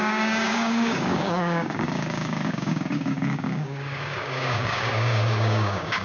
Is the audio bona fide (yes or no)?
no